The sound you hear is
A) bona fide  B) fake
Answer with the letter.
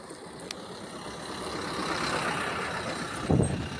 A